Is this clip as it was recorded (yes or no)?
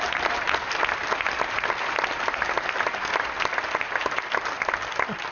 yes